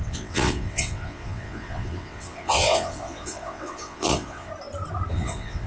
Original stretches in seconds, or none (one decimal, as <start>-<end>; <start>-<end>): 4.5-5.1